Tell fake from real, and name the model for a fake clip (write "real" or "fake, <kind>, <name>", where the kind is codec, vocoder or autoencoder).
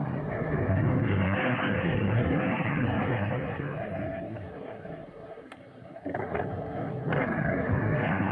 fake, codec, SNAC